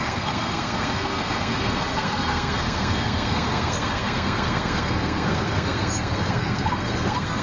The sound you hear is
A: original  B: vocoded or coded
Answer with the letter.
B